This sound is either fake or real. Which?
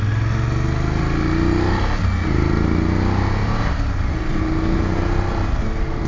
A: real